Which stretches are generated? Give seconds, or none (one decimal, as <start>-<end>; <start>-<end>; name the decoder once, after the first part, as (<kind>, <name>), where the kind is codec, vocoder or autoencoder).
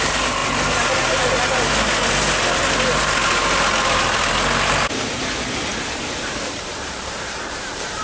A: 5.7-8.0 (vocoder, BigVGAN v2)